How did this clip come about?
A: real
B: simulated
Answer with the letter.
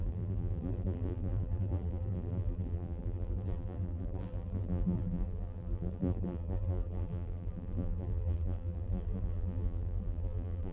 B